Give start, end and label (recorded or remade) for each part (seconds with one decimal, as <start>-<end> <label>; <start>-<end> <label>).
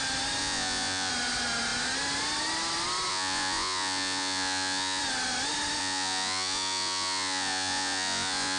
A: 0.0-0.4 recorded; 0.4-1.1 remade; 1.1-3.1 recorded; 3.1-5.0 remade; 5.0-5.8 recorded; 5.8-8.6 remade